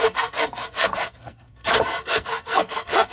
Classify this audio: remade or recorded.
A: remade